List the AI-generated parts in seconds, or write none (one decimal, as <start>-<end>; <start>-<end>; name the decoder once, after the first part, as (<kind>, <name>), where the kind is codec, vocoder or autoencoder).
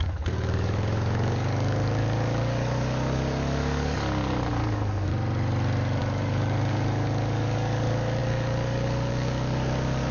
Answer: 0.0-5.1 (codec, DAC); 6.0-10.1